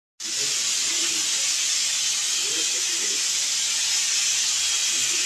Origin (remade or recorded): recorded